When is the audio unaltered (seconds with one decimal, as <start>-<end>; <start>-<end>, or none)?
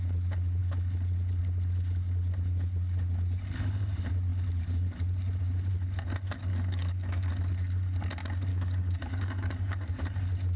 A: 0.0-6.5; 7.3-8.5; 9.9-10.6